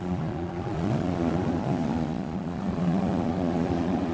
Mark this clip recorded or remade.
remade